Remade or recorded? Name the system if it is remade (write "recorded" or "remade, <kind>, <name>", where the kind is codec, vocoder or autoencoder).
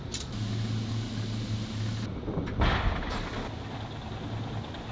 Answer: recorded